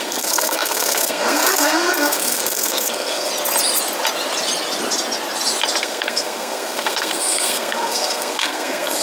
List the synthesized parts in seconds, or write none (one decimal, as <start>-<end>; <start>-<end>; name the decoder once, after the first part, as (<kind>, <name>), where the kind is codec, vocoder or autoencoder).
0.0-3.3 (codec, SNAC); 5.8-9.0